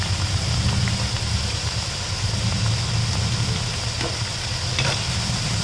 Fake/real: real